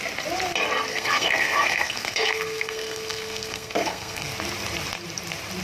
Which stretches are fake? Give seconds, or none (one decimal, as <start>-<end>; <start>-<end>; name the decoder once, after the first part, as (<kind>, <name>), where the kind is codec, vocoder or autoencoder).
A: 0.9-4.3 (codec, SNAC)